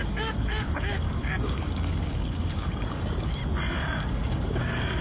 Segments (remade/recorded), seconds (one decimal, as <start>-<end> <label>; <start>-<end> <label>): 0.0-3.4 remade; 3.4-3.9 recorded; 3.9-5.0 remade